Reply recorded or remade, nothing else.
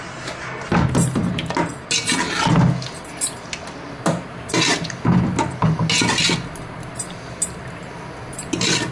recorded